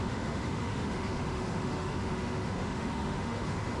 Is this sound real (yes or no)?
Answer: no